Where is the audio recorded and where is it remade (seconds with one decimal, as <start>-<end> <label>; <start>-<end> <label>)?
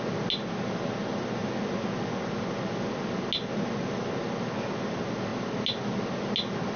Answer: 0.0-6.8 recorded